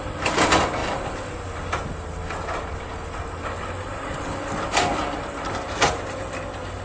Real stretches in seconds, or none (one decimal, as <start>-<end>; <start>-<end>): 0.0-6.8